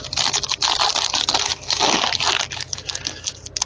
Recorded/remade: recorded